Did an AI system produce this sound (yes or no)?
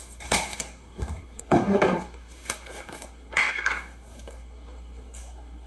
yes